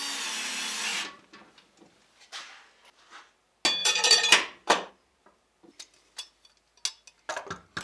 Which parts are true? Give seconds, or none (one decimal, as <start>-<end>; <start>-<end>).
0.0-3.8; 4.9-7.8